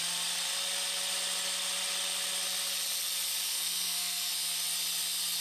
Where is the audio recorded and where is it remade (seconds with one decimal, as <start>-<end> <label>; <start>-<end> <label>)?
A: 0.0-3.5 recorded; 3.5-4.3 remade; 4.3-5.4 recorded